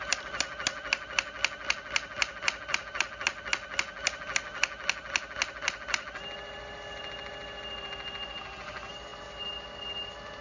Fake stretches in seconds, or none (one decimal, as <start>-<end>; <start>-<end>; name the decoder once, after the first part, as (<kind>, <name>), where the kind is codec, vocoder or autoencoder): none